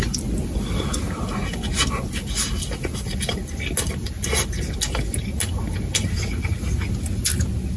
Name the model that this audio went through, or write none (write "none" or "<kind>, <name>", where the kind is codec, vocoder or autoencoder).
none